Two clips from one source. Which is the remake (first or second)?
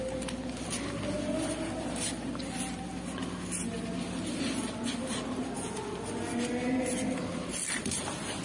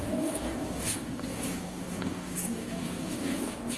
second